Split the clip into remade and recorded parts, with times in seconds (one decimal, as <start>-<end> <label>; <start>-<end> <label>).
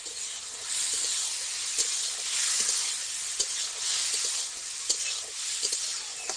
0.0-6.4 recorded